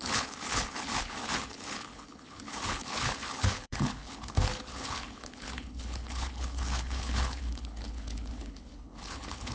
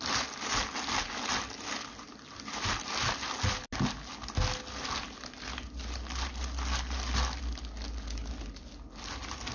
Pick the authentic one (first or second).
second